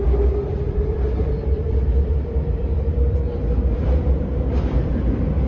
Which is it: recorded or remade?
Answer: remade